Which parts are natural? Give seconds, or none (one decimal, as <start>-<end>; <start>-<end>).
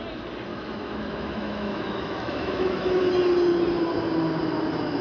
0.0-0.5; 3.0-5.0